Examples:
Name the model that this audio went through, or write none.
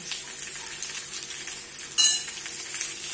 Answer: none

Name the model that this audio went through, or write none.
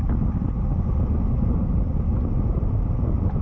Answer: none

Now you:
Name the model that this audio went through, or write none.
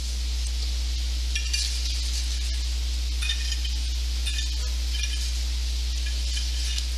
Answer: none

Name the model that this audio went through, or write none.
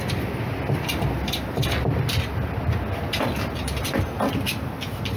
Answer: none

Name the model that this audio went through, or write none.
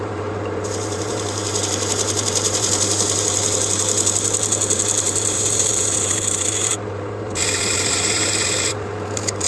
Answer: vocoder, BigVGAN v2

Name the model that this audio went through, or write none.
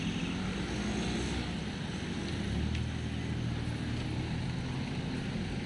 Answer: none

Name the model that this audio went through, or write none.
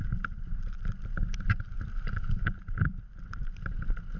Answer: vocoder, BigVGAN v2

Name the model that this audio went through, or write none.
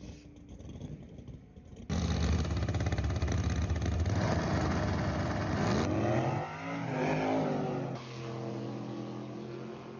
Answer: none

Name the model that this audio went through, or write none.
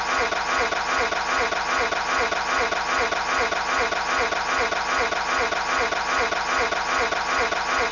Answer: none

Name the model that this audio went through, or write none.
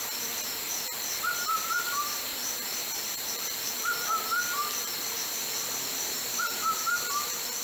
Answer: vocoder, BigVGAN v2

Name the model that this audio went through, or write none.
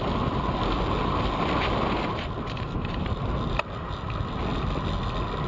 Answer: none